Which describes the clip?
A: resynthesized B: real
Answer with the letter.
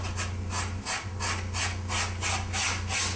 B